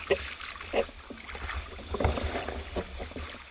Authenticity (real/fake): real